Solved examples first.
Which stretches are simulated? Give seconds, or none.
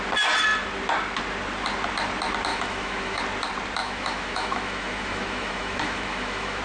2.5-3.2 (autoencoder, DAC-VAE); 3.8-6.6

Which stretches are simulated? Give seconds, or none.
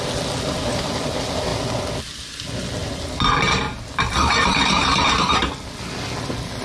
4.2-5.4 (vocoder, BigVGAN v2)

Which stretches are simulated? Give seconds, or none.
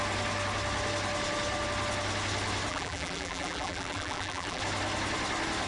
2.7-4.6 (vocoder, BigVGAN v2)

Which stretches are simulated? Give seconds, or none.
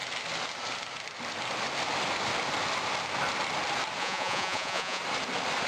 4.0-5.0 (vocoder, Vocos)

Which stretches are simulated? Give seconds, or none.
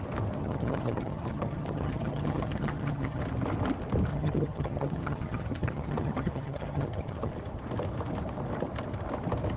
0.4-3.2 (vocoder, HiFi-GAN); 4.1-7.3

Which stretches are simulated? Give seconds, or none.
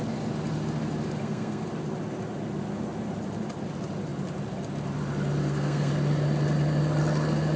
1.2-1.7 (codec, SNAC); 5.4-5.9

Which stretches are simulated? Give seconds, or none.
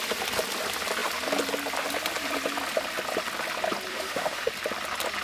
3.9-4.5 (autoencoder, DAC-VAE)